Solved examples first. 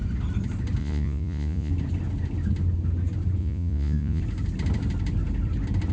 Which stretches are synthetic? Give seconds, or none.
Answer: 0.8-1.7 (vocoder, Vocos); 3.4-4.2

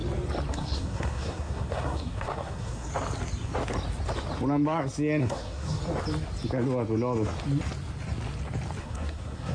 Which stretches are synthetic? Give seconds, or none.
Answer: 0.5-2.9 (codec, SNAC); 5.2-5.8; 8.8-9.5